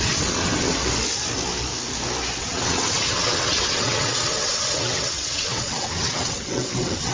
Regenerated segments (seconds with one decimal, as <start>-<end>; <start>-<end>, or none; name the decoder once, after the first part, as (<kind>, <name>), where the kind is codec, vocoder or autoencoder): 0.0-0.8 (vocoder, WaveNeXt); 2.4-7.1